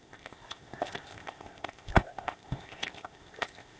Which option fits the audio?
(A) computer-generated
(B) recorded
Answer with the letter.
A